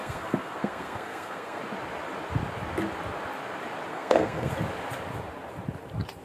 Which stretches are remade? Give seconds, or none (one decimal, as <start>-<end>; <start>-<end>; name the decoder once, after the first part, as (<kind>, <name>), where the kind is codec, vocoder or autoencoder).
0.0-1.6 (codec, SNAC); 3.9-4.5